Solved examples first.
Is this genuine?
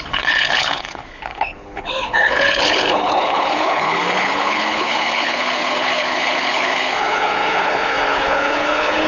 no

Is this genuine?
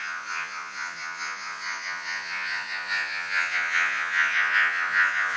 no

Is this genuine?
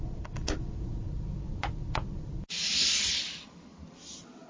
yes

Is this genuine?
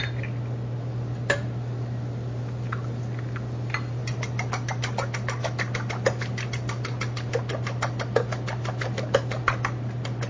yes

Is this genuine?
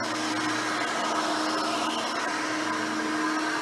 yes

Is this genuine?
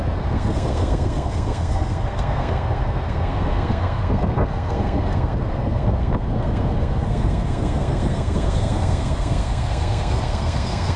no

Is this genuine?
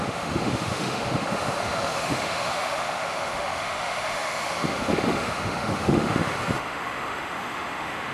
no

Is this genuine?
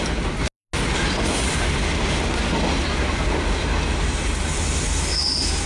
yes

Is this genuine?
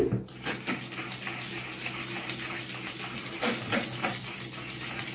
yes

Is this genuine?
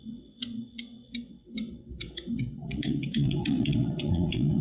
no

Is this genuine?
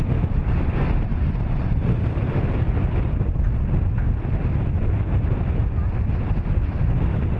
yes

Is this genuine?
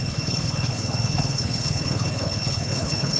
no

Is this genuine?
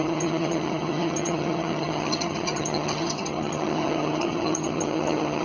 no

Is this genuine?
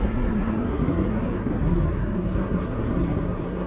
no